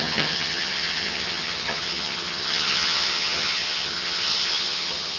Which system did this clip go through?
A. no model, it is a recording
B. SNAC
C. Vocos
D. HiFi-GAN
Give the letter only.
D